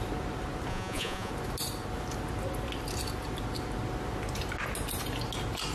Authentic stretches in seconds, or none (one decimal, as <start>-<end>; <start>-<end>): 0.0-0.7; 1.3-5.7